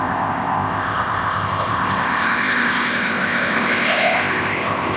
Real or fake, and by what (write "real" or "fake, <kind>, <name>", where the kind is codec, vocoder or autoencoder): fake, codec, ZipCodec